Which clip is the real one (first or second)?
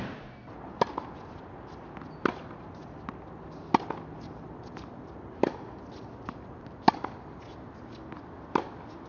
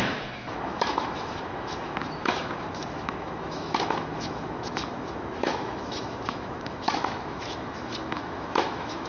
first